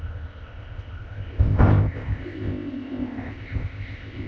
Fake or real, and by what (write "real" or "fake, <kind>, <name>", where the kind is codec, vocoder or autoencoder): fake, codec, ZipCodec